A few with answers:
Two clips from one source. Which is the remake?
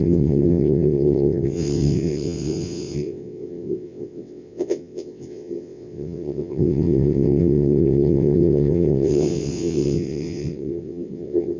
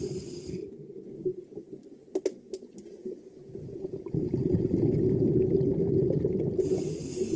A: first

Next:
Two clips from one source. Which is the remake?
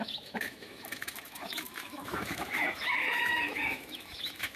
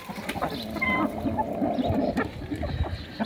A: first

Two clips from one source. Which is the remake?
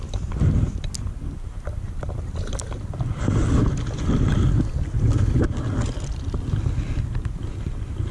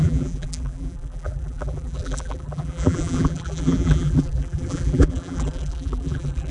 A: second